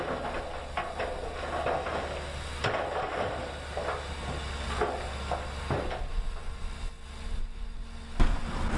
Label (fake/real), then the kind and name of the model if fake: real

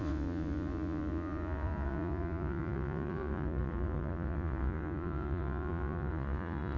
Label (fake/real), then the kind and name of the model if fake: fake, vocoder, Vocos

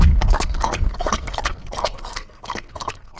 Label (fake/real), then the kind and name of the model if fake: fake, codec, SNAC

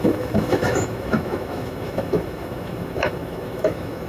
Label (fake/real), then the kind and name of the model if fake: fake, autoencoder, DAC-VAE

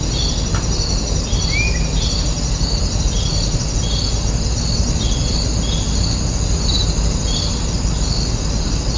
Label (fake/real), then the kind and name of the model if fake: real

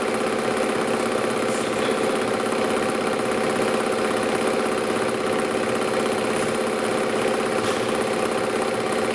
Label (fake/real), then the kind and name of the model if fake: real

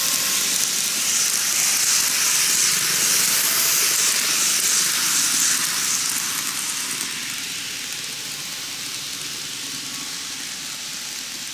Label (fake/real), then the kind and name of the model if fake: real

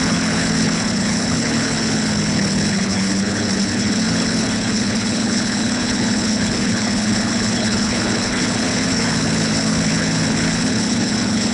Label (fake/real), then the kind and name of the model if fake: fake, codec, HILCodec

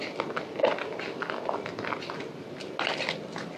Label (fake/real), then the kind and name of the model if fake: real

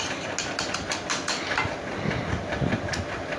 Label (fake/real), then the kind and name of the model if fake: real